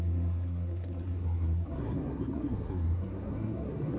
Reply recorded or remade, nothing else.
remade